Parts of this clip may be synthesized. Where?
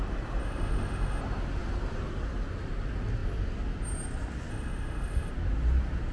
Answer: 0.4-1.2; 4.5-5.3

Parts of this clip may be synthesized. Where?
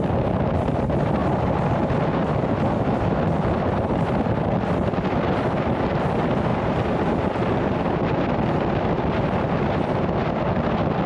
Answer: 6.5-7.0